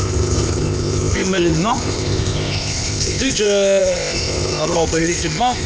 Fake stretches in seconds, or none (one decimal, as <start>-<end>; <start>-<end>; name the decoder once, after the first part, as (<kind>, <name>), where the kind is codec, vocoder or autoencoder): 0.0-5.7 (codec, ZipCodec)